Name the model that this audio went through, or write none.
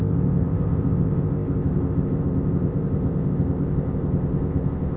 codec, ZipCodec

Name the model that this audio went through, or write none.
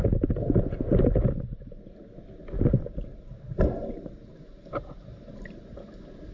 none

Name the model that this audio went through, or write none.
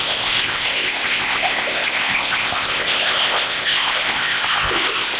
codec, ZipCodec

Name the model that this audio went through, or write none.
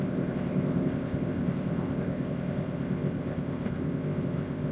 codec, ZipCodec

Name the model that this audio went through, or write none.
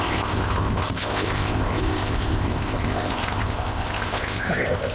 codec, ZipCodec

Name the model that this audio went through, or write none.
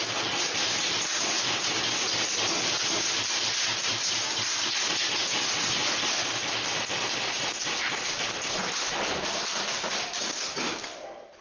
none